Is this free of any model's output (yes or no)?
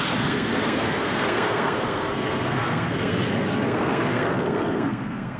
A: no